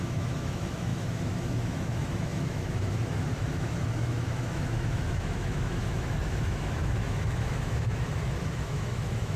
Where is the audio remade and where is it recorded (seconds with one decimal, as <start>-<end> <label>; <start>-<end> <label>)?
0.0-9.4 remade